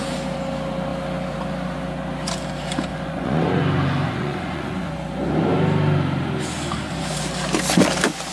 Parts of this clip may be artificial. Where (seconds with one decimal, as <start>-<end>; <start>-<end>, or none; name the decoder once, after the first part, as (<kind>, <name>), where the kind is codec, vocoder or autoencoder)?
2.9-4.9 (vocoder, Vocos)